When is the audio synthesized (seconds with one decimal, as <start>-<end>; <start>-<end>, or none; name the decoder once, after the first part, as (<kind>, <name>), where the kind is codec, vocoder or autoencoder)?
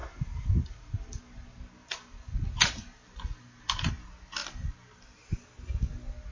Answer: 0.0-1.2 (vocoder, BigVGAN v2); 1.8-3.9